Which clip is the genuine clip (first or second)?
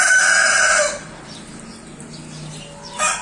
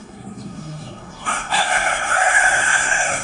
first